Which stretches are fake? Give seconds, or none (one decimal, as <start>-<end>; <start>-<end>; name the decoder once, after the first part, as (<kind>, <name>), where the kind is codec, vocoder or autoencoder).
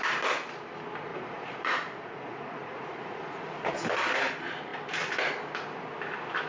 1.1-3.7 (vocoder, Vocos)